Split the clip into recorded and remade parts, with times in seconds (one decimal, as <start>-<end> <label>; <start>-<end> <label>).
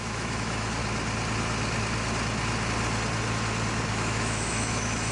0.0-0.8 remade; 0.8-3.9 recorded; 3.9-5.1 remade